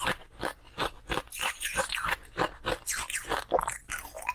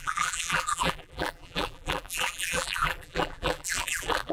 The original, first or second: first